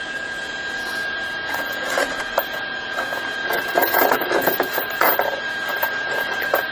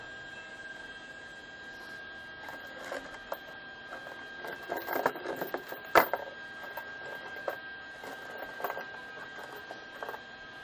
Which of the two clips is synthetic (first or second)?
first